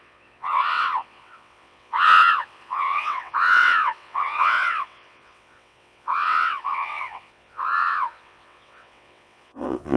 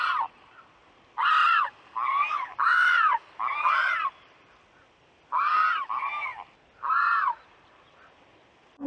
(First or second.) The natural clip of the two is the second